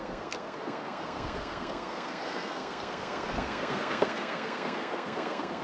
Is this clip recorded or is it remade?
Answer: remade